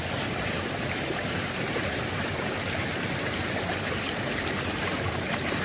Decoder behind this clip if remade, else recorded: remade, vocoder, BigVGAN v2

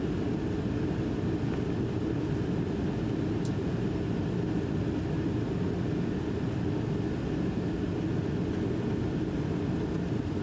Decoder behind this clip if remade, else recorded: recorded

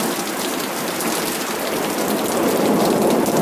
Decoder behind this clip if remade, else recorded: recorded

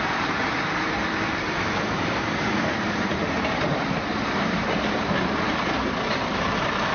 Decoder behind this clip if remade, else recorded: remade, vocoder, BigVGAN v2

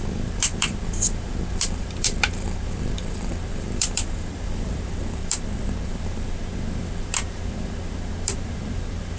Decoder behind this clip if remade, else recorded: remade, vocoder, BigVGAN v2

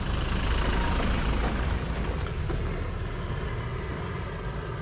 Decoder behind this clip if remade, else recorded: recorded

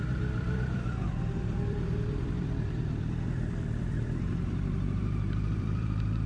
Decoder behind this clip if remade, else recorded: remade, vocoder, BigVGAN v2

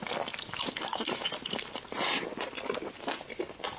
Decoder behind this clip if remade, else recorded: recorded